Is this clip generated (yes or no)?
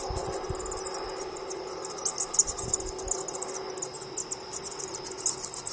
no